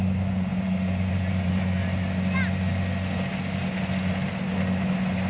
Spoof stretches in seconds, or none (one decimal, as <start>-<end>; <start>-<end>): 0.0-1.8

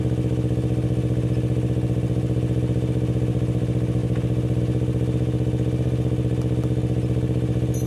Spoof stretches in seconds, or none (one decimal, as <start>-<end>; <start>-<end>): none

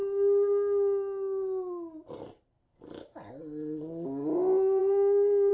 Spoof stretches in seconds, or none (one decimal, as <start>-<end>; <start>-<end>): 4.8-5.5

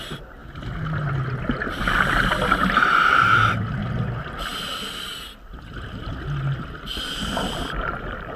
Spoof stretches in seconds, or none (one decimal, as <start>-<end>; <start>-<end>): none

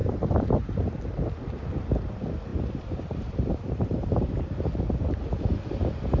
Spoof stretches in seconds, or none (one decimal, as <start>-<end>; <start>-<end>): 0.0-1.0; 2.5-4.4

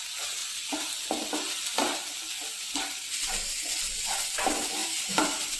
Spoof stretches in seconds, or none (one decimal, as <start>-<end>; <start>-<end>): 4.8-5.6

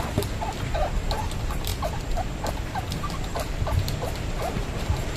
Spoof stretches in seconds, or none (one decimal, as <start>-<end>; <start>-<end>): 1.7-4.8